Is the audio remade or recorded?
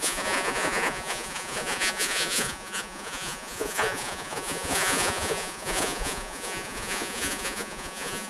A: remade